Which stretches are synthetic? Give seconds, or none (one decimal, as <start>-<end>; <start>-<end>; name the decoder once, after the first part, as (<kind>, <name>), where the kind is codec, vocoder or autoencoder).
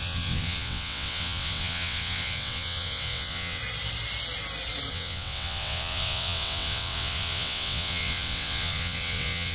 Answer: 0.0-3.6 (vocoder, WaveNeXt); 4.9-9.5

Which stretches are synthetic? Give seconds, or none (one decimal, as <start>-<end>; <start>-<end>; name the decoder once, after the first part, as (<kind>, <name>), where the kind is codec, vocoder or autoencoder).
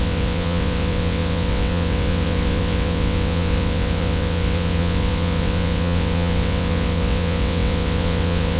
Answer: 0.0-8.6 (vocoder, WaveNeXt)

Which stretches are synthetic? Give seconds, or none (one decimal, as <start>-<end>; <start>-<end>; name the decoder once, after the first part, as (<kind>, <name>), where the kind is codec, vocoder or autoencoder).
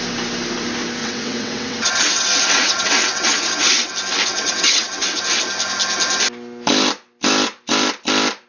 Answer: 1.0-3.9 (vocoder, WaveNeXt); 4.3-5.2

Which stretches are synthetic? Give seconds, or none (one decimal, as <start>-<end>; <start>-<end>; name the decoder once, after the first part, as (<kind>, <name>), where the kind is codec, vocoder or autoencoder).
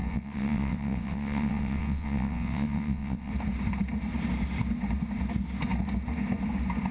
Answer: 0.0-3.3 (vocoder, WaveNeXt)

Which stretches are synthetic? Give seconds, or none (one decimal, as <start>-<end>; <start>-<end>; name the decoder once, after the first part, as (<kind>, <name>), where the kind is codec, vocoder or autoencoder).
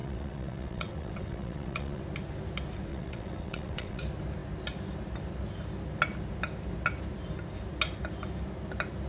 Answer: 0.0-2.0 (vocoder, WaveNeXt); 2.9-4.0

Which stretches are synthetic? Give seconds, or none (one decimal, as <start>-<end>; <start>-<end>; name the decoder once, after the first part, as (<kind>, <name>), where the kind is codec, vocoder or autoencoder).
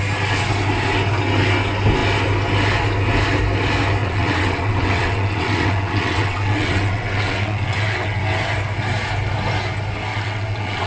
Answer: 4.0-8.2 (vocoder, WaveNeXt); 10.1-10.9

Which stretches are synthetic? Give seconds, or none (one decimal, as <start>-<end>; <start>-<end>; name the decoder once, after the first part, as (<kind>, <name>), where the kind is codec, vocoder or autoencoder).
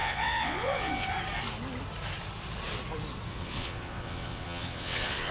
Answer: 0.0-1.1 (vocoder, WaveNeXt); 3.3-5.3